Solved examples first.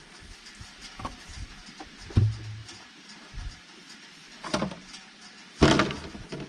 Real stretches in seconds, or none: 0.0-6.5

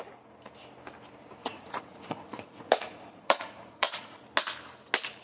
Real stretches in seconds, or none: 0.0-1.4; 4.2-5.2

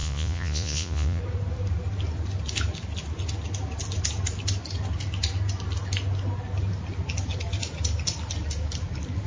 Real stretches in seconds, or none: 1.2-9.3

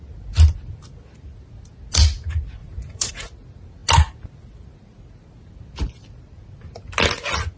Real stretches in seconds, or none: 0.0-2.6; 3.1-7.6

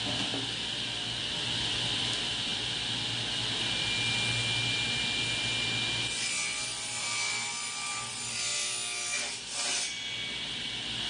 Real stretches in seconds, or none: 0.0-11.1

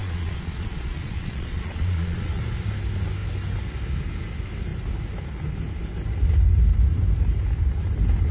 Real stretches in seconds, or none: 2.4-8.3